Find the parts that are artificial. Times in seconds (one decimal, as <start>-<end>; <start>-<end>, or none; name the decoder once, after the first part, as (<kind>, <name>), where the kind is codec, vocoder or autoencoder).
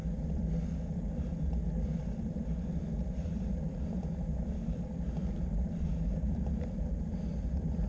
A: 3.2-7.9 (vocoder, BigVGAN v2)